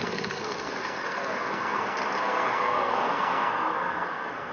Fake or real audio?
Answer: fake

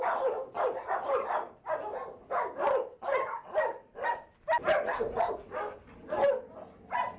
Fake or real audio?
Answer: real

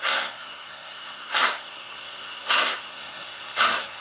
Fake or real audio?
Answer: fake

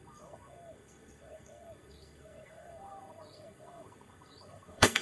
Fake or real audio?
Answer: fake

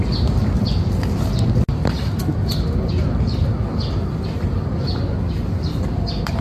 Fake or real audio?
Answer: real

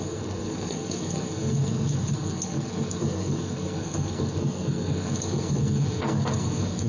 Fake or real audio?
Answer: fake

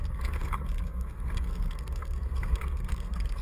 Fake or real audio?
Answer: fake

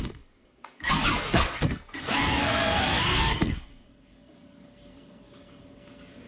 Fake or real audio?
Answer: fake